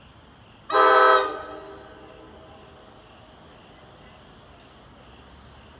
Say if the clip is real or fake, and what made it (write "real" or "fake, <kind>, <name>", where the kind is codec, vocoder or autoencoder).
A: real